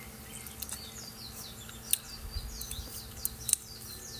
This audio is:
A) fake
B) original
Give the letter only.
B